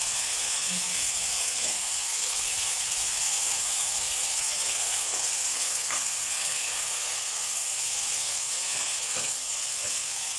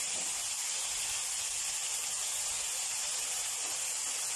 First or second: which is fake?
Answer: first